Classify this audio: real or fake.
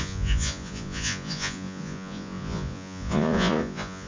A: fake